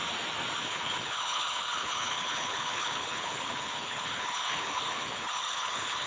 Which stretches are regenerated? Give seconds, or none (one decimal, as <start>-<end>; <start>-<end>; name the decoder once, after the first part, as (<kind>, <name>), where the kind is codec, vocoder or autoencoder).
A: 0.6-6.1 (codec, HILCodec)